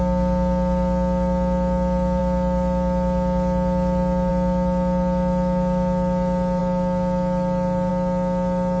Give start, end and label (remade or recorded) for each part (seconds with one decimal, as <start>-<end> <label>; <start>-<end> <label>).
0.0-8.8 recorded